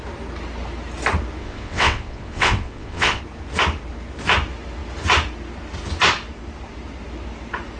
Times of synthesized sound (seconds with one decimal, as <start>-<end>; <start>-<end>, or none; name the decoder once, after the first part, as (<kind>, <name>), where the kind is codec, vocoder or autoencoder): 1.4-3.2 (vocoder, WaveNeXt)